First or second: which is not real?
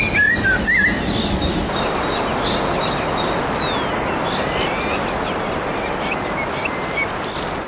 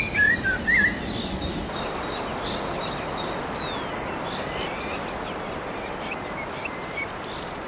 second